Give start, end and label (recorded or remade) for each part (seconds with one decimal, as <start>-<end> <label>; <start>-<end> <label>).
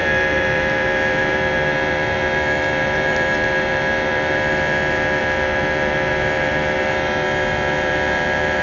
0.0-8.6 remade